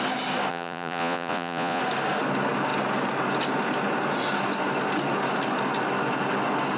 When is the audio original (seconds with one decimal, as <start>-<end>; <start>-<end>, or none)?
0.0-0.5; 1.8-6.8